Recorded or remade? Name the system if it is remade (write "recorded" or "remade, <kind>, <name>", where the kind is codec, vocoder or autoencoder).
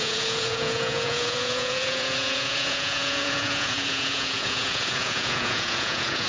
remade, vocoder, Vocos